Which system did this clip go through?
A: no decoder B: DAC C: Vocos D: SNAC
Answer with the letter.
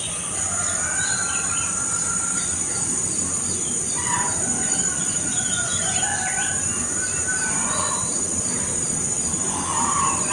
C